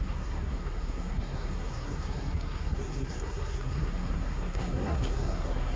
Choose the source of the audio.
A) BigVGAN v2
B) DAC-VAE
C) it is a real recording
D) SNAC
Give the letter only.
D